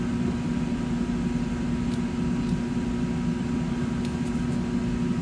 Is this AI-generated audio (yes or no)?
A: no